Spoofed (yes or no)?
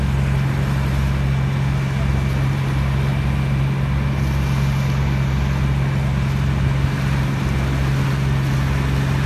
no